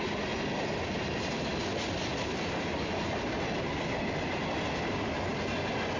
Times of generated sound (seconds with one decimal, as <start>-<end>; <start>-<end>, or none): none